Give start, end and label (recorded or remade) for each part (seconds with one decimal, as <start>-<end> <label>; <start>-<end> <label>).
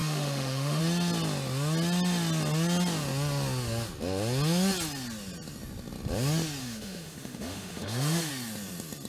0.0-0.8 remade; 0.8-6.6 recorded; 6.6-8.3 remade; 8.3-9.1 recorded